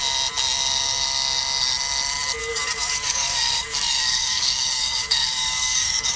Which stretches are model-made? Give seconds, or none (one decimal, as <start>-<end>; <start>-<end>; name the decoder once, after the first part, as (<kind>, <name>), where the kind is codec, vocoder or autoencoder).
2.4-6.2 (codec, DAC)